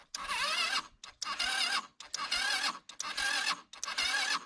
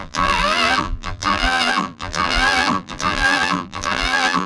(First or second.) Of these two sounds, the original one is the first